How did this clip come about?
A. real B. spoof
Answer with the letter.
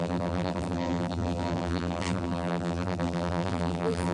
B